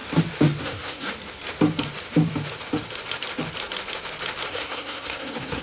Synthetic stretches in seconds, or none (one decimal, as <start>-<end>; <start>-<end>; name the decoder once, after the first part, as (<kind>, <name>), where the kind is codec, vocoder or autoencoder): 0.6-1.1 (codec, SNAC); 4.5-5.6